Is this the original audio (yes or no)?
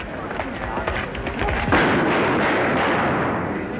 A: yes